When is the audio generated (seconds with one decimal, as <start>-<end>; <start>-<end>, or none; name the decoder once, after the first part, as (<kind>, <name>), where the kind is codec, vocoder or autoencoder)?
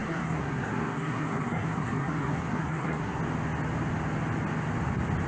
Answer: 0.0-3.2 (codec, SNAC)